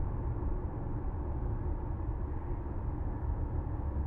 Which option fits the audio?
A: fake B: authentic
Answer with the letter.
B